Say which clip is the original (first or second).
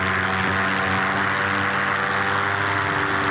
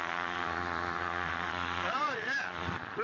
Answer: first